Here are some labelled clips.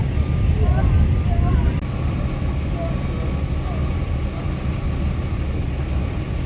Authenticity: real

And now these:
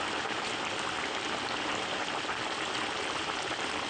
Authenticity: real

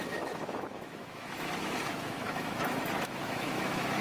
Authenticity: fake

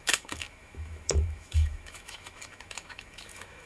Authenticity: fake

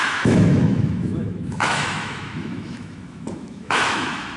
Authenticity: fake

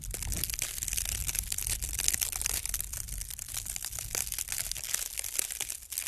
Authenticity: real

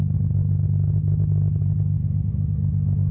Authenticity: real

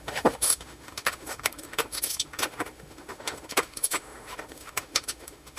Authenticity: fake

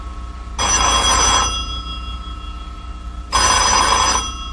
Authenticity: real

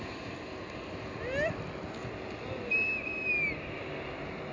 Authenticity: real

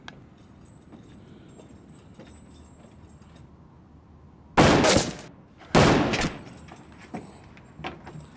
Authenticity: real